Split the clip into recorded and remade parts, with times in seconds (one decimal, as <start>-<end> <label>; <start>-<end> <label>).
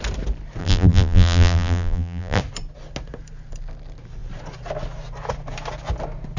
0.0-0.6 recorded; 0.6-2.4 remade; 2.4-6.4 recorded